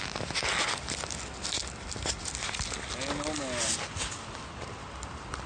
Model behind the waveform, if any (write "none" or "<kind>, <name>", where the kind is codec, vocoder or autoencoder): none